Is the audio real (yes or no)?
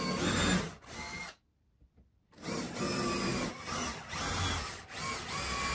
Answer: yes